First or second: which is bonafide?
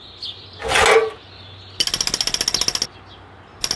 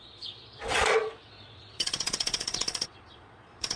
first